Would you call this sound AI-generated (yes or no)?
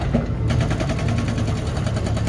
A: no